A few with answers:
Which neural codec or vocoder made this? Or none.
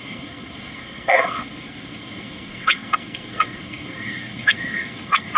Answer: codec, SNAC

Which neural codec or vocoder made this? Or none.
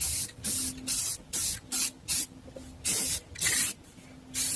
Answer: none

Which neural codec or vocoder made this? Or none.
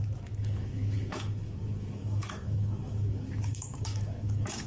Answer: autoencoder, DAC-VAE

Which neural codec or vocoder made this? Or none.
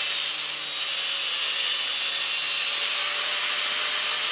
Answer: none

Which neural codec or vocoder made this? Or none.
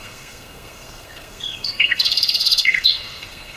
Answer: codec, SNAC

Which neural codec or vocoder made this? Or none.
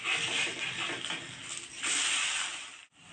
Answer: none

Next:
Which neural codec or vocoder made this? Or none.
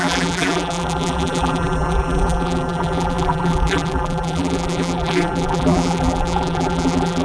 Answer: vocoder, BigVGAN v2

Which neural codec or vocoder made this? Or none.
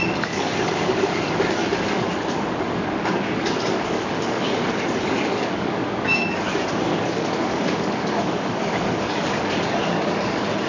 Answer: codec, DAC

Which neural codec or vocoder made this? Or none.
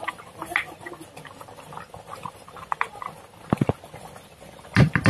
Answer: none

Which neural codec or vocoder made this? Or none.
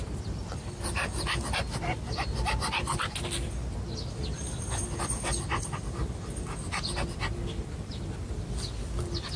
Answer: none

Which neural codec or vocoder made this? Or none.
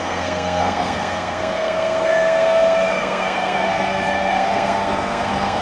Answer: codec, SNAC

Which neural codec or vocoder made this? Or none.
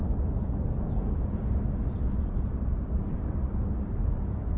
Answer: none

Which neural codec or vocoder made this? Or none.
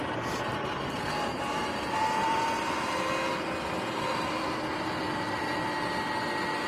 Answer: none